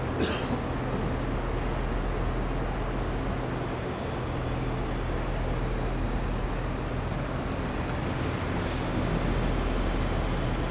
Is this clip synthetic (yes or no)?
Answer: no